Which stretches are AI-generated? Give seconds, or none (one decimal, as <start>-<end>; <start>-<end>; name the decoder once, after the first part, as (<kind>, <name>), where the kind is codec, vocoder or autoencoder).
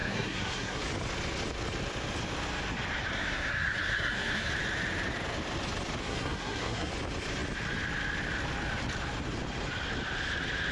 0.0-0.8 (codec, SNAC); 3.1-4.5; 6.0-6.9